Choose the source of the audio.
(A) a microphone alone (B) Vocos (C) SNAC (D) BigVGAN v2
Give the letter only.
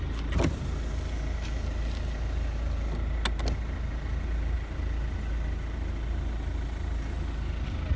A